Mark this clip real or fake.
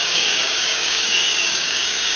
fake